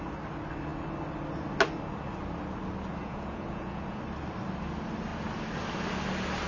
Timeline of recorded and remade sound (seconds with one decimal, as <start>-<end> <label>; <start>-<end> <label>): 0.0-3.0 recorded; 3.0-4.0 remade; 4.0-6.5 recorded